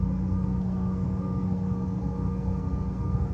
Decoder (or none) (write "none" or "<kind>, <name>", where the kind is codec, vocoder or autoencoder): codec, SNAC